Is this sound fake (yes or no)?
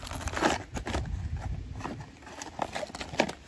no